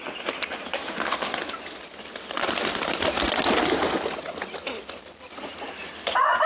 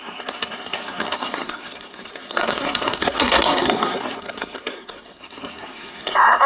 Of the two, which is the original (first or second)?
first